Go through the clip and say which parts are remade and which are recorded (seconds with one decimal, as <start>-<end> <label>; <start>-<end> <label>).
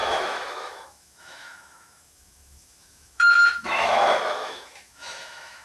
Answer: 0.0-5.6 remade